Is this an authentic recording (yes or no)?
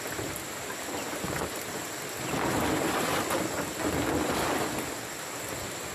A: yes